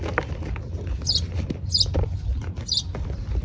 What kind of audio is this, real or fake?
real